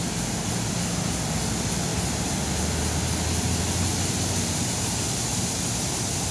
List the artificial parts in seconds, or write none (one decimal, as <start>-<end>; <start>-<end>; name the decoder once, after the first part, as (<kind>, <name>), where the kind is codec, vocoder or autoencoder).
1.9-5.7 (vocoder, BigVGAN v2)